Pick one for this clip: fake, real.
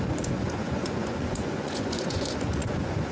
fake